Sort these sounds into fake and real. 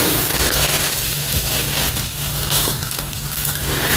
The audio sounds fake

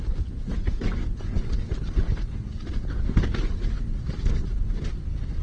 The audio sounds real